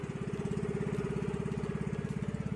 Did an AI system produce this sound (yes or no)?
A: no